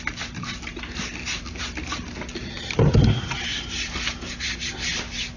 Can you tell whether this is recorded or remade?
recorded